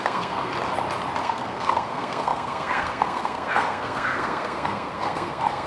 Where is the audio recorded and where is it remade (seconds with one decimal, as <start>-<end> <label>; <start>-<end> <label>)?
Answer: 0.0-0.5 remade; 0.5-1.2 recorded; 1.2-5.7 remade